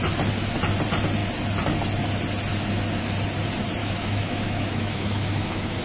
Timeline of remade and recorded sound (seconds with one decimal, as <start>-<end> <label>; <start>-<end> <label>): 0.0-3.8 recorded; 3.8-5.8 remade